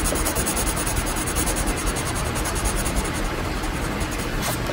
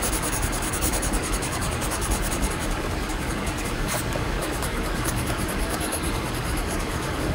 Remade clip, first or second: second